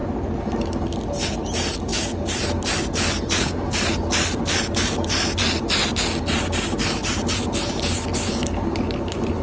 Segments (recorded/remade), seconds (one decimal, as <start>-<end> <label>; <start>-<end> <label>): 0.0-9.4 recorded